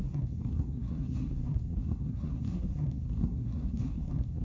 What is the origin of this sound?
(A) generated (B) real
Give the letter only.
A